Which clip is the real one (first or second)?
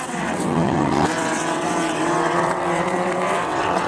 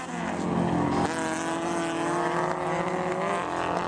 second